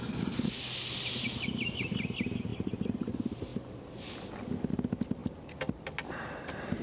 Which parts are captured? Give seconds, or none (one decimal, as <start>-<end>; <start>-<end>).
0.0-6.8